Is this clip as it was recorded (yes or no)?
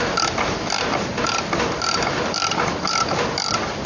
yes